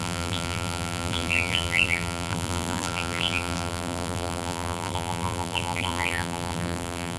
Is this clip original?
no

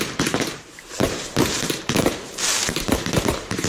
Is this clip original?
no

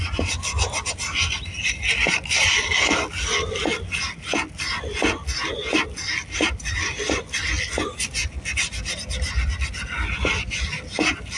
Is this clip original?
yes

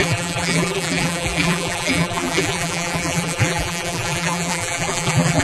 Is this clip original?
no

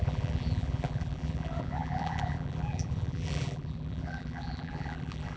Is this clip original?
no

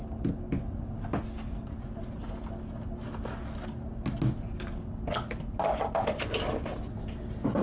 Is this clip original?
yes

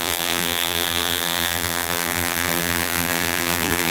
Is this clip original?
no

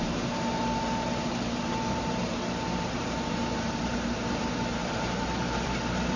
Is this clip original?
no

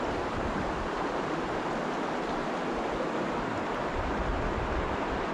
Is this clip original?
yes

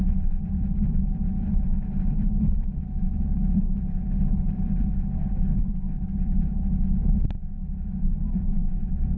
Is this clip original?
no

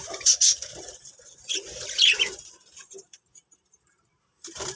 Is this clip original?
no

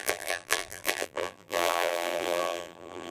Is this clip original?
no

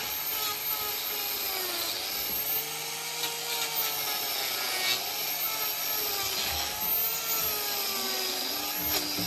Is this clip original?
yes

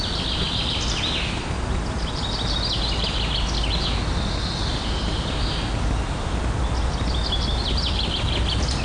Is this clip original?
yes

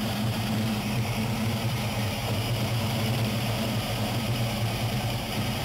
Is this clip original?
no